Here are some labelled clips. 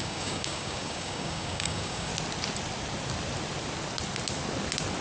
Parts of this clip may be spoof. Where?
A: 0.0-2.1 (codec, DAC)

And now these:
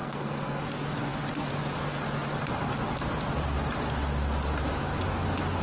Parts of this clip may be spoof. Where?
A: 0.0-0.6 (codec, SNAC)

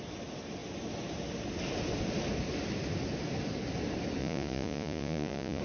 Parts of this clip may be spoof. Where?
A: 4.2-5.6 (vocoder, Vocos)

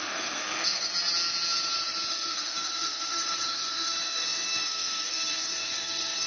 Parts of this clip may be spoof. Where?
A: 0.0-0.9 (codec, SNAC); 2.1-6.3

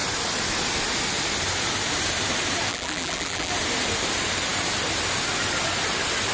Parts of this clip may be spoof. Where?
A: 2.7-3.5 (vocoder, BigVGAN v2)

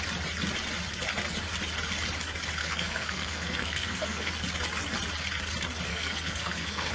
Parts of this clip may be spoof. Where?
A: 2.6-4.3 (codec, SNAC); 5.9-6.9